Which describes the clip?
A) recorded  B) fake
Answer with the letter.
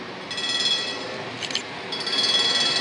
A